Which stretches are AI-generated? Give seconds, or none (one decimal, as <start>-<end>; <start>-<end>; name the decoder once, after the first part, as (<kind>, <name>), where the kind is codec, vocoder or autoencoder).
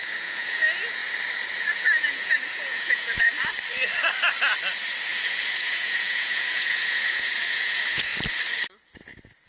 0.0-1.0 (vocoder, Vocos); 1.6-3.3; 5.1-8.1